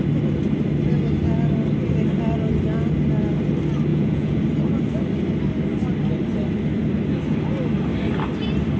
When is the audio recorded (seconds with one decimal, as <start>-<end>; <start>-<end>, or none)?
0.0-3.9; 4.4-8.8